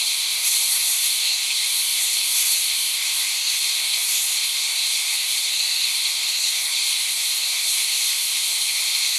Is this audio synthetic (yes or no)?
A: yes